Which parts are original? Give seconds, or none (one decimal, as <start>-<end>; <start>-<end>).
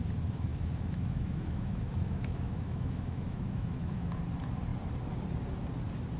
0.0-0.5; 4.2-6.2